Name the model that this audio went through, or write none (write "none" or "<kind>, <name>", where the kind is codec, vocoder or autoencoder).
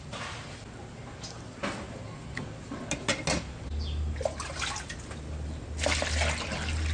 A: none